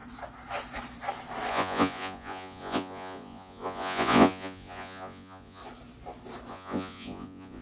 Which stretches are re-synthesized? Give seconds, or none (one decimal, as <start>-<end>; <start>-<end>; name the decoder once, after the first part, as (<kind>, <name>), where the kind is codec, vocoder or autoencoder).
1.5-5.6 (vocoder, Vocos); 6.5-7.6